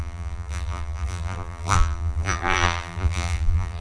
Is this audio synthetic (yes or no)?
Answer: yes